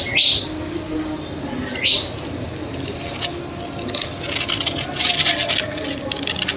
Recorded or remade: recorded